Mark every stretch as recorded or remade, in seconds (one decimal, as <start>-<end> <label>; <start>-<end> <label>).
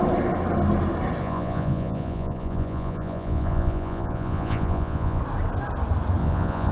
0.0-1.2 recorded; 1.2-5.2 remade; 5.2-6.2 recorded; 6.2-6.7 remade